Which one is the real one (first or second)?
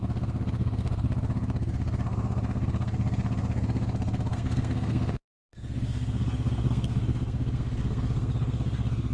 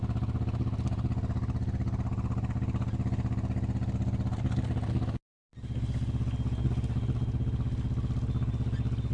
second